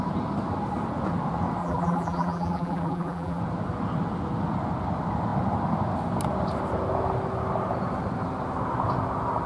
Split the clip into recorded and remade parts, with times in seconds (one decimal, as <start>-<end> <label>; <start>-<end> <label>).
0.0-1.6 recorded; 1.6-3.4 remade; 3.4-9.5 recorded